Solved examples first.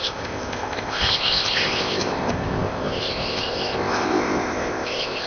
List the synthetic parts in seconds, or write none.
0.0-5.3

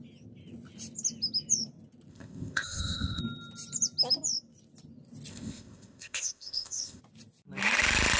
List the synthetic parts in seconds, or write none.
2.1-3.2; 5.3-7.0